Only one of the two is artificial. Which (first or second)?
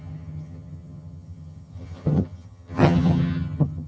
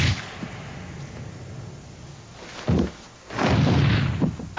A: first